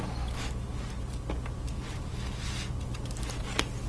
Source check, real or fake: real